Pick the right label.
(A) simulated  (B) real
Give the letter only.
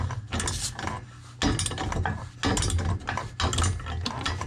B